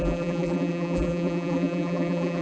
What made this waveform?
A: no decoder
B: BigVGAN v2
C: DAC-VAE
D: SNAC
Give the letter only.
B